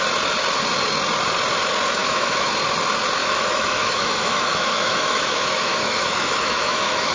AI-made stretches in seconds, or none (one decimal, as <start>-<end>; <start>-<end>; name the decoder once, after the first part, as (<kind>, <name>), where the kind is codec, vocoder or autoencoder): 2.0-2.5 (autoencoder, DAC-VAE); 3.2-7.1